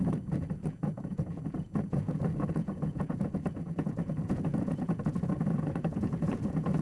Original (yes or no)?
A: no